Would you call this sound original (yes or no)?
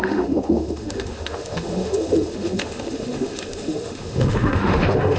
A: no